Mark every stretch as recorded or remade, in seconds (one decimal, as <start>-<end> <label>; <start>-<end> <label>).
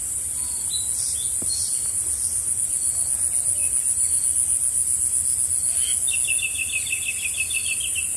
0.0-8.2 recorded